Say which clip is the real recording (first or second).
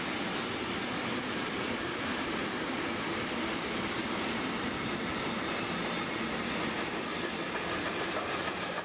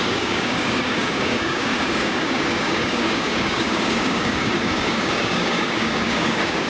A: first